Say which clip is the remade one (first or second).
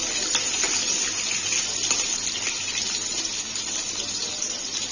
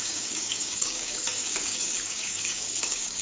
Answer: second